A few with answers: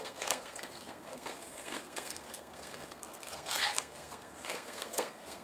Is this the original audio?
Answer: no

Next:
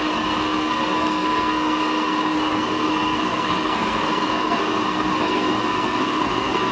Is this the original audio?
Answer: no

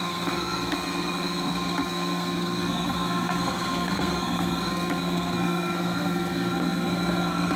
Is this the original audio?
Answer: no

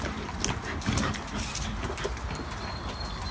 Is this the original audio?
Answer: yes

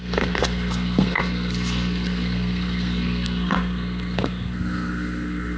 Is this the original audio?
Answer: no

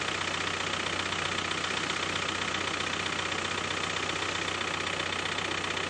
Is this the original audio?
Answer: yes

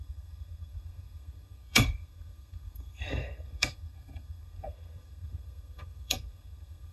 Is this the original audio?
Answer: no